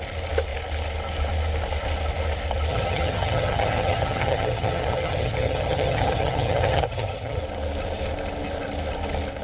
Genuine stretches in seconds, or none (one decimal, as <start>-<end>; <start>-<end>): 0.0-2.7; 7.4-9.4

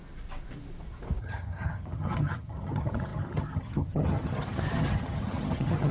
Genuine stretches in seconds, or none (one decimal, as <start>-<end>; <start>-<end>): 0.0-1.2

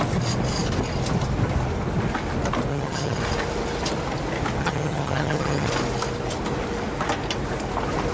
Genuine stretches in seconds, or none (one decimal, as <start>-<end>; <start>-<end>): 0.0-2.7; 3.2-4.6; 5.7-8.1